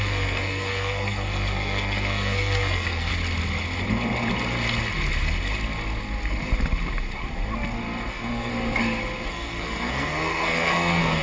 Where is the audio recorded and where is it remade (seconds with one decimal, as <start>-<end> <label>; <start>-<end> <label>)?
0.0-3.1 remade; 3.1-8.1 recorded; 8.1-8.5 remade; 8.5-9.3 recorded; 9.3-11.2 remade